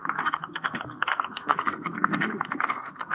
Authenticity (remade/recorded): remade